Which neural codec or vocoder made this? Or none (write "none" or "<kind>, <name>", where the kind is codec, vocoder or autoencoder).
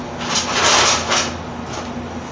none